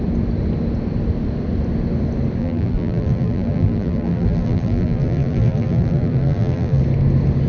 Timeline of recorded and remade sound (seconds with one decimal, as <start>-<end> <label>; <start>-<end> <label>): 0.0-2.4 recorded; 2.4-6.8 remade; 6.8-7.5 recorded